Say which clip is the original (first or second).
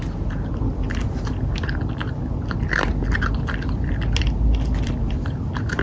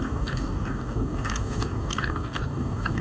first